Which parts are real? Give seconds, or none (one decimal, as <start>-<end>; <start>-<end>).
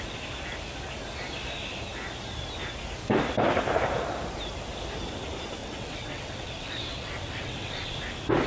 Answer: 0.0-5.6; 8.0-8.5